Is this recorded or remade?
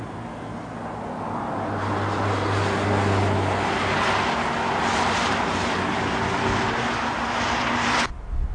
recorded